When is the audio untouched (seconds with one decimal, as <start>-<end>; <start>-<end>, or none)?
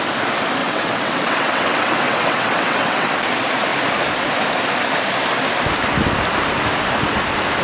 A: 0.0-0.6; 3.1-7.6